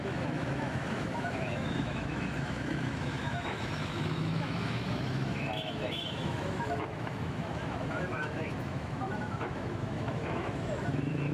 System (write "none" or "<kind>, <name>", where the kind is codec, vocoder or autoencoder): autoencoder, DAC-VAE